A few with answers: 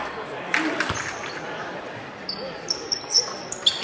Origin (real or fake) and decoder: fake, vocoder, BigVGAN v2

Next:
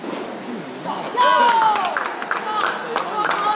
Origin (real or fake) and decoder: real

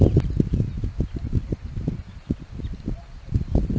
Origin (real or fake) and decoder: real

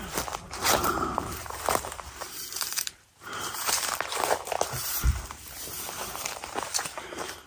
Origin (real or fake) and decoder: fake, vocoder, BigVGAN v2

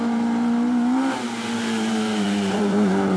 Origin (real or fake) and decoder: fake, vocoder, BigVGAN v2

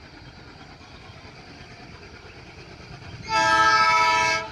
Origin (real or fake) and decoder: real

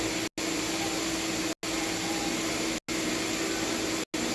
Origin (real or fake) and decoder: real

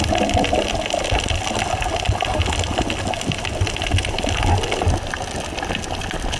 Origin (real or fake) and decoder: real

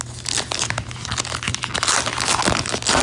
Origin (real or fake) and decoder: real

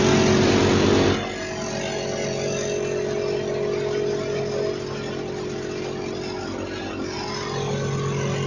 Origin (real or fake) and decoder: real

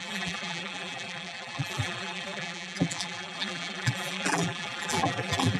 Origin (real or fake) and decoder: fake, vocoder, BigVGAN v2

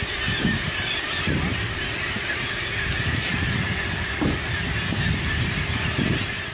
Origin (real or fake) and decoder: fake, vocoder, BigVGAN v2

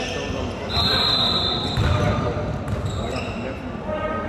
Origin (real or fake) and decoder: fake, vocoder, BigVGAN v2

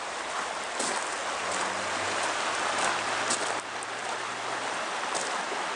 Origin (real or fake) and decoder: real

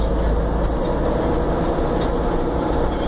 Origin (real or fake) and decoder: real